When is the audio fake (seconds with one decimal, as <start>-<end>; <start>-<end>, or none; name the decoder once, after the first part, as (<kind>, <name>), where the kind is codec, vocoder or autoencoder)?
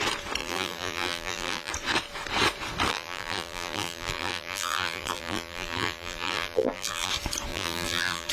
0.4-1.7 (vocoder, BigVGAN v2); 2.9-7.1; 7.5-8.3